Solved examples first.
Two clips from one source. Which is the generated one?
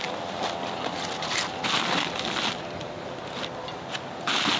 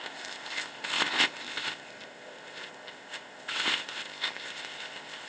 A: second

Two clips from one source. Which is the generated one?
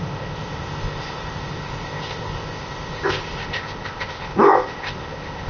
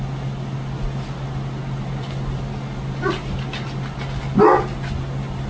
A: first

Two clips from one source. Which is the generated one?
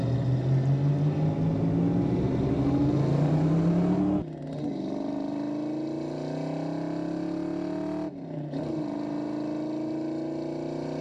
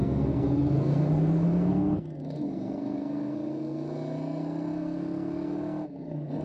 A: second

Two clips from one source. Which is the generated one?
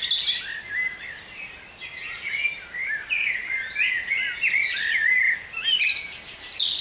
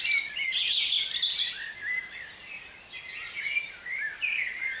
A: second